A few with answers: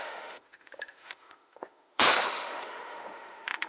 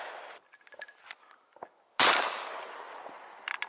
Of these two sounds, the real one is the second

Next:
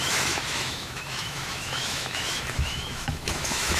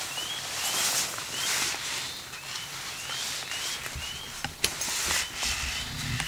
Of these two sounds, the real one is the second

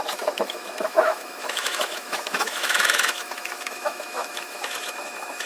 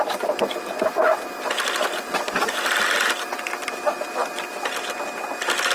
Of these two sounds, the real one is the second